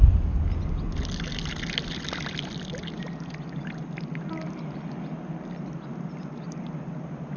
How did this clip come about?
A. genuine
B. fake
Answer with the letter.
A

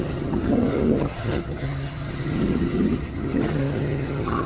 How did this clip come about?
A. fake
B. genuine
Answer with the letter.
A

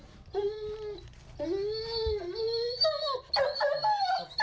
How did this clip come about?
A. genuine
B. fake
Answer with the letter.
A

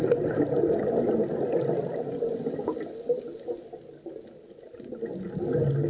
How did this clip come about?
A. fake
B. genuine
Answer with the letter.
B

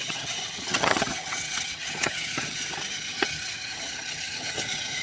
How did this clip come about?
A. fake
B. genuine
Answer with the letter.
A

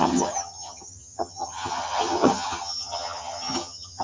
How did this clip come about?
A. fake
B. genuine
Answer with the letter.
A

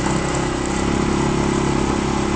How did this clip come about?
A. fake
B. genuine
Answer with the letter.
B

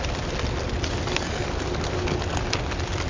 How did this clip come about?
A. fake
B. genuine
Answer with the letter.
B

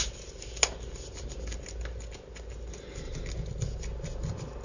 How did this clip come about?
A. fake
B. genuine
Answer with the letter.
B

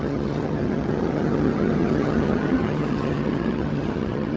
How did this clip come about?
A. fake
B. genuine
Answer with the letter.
A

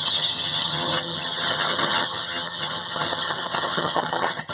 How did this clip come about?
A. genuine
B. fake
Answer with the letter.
B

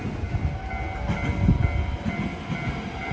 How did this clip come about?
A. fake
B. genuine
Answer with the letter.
B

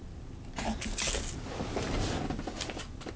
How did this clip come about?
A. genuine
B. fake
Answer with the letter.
A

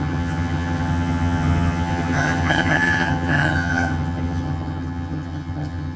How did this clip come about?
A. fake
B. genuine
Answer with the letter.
A